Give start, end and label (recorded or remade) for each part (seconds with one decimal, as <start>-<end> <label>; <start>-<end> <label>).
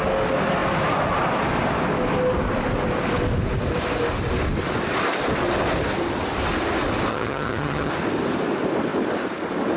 0.0-7.1 recorded; 7.1-7.9 remade; 7.9-9.8 recorded